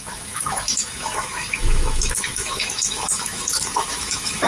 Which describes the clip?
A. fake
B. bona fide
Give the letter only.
A